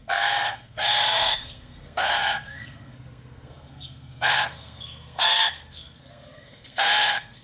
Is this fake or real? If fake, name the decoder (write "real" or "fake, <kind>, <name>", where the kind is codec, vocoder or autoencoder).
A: fake, codec, SNAC